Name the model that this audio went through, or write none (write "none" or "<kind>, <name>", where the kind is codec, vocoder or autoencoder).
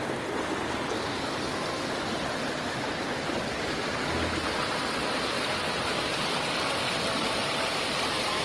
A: none